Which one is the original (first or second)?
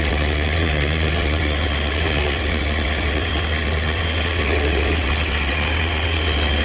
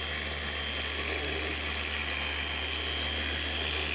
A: second